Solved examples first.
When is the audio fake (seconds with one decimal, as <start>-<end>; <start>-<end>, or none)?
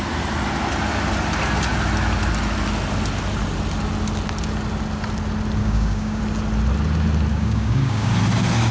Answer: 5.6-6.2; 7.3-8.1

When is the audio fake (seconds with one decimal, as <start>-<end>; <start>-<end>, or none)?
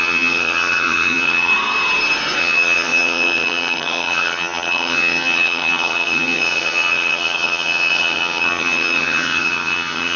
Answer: 0.0-1.5; 2.4-10.2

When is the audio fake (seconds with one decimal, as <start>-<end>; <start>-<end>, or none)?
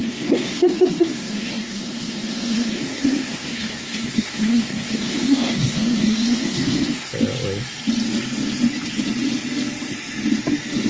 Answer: 0.0-7.1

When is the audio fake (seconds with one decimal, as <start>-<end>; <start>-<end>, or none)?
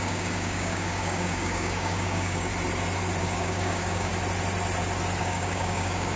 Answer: 0.0-2.5; 3.2-4.1; 5.2-6.2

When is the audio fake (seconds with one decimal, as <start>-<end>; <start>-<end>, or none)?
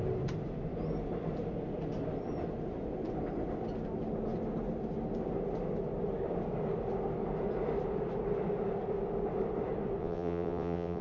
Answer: 10.0-11.0